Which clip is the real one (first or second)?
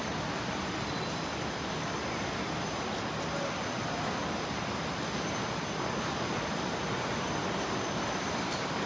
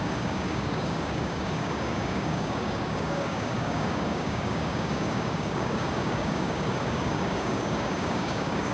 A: first